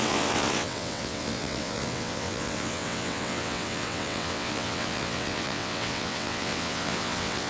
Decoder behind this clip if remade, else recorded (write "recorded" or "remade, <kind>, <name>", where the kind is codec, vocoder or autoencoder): remade, vocoder, WaveNeXt